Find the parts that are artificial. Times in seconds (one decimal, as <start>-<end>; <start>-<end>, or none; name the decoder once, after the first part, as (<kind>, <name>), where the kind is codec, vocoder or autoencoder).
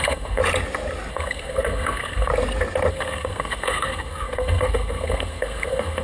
0.0-0.4 (codec, SNAC); 1.1-2.3; 2.9-6.0